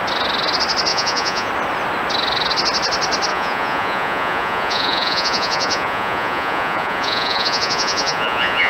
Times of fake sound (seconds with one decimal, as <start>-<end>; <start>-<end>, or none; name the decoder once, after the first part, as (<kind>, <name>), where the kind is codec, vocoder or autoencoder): 0.9-1.5 (vocoder, Vocos); 3.3-8.7